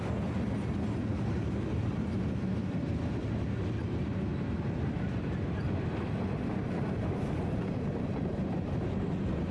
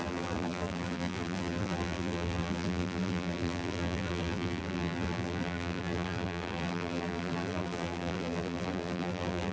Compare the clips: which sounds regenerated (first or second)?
second